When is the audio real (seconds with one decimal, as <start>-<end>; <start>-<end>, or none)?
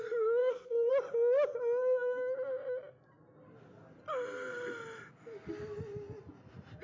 0.0-0.4; 0.9-6.8